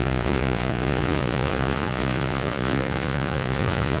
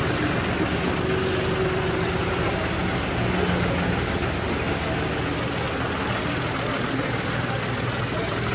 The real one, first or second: second